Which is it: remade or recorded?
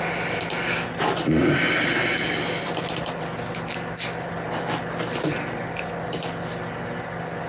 recorded